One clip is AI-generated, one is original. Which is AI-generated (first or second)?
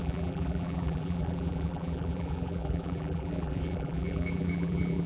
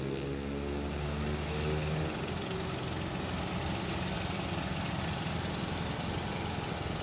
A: first